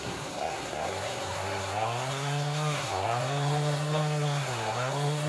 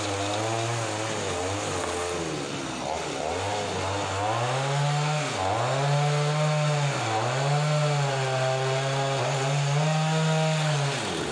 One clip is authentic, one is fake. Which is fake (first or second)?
first